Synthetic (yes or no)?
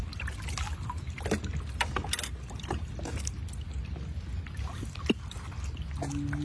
no